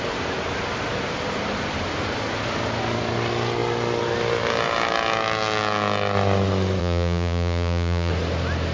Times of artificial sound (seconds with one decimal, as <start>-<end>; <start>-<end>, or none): 6.8-8.1